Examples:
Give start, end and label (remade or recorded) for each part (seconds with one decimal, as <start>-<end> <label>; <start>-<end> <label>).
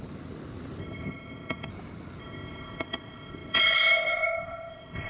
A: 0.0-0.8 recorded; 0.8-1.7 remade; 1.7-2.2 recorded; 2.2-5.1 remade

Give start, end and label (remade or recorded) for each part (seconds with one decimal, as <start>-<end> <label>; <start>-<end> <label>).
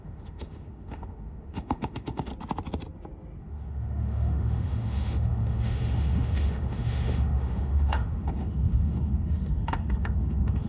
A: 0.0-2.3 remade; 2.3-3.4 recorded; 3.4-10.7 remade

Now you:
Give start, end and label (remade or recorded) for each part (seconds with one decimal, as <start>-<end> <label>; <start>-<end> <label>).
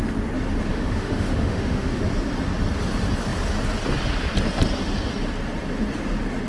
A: 0.0-0.7 recorded; 0.7-2.0 remade; 2.0-6.5 recorded